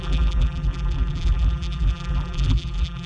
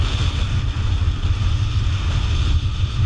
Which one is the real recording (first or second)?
second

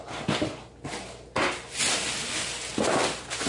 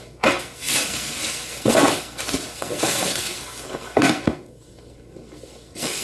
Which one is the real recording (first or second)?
first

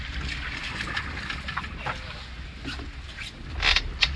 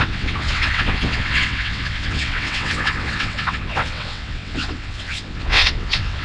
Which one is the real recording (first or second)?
first